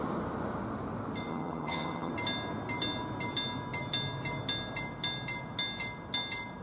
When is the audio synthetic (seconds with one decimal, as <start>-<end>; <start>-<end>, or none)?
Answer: 1.3-2.1